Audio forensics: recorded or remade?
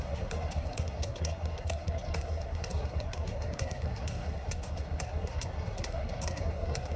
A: remade